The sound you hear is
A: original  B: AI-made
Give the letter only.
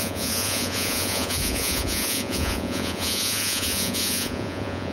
B